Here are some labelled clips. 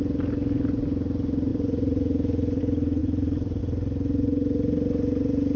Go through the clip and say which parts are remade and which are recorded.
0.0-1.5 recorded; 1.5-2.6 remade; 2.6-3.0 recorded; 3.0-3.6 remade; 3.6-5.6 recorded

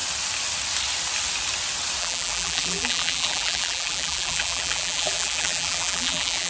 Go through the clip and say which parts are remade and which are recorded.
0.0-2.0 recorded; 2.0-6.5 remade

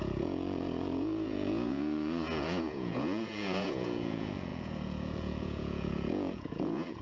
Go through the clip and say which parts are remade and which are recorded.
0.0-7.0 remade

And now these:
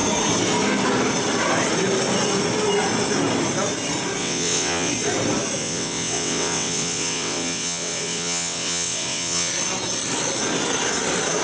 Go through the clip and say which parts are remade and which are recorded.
0.0-4.2 recorded; 4.2-4.9 remade; 4.9-5.6 recorded; 5.6-9.5 remade; 9.5-11.4 recorded

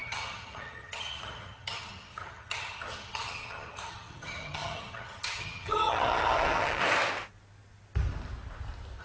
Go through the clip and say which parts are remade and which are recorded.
0.0-6.8 remade; 6.8-9.0 recorded

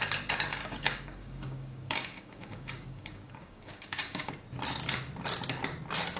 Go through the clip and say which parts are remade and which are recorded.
0.0-0.6 recorded; 0.6-4.3 remade; 4.3-6.2 recorded